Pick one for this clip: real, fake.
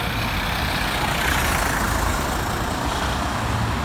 real